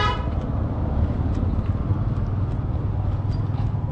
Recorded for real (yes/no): yes